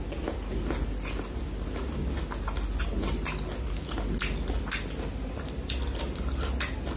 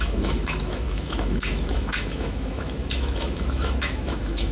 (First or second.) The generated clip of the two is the second